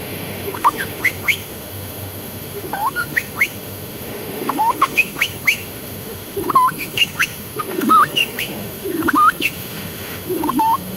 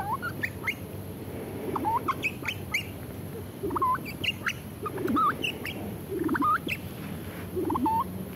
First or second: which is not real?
first